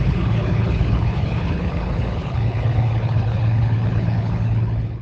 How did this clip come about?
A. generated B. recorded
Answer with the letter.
A